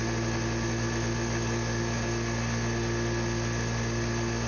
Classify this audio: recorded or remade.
recorded